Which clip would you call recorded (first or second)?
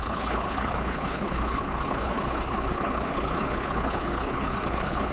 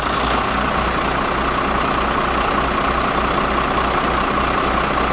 second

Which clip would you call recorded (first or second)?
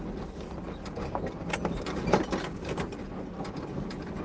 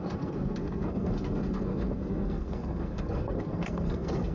first